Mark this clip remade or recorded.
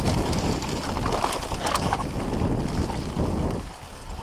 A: recorded